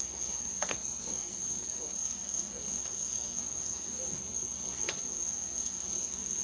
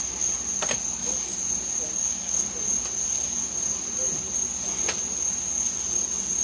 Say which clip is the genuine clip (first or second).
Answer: second